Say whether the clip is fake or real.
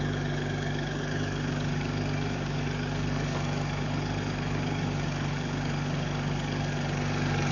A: fake